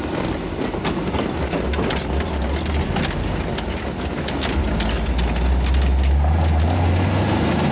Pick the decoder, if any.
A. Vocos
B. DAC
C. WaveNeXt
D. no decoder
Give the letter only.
D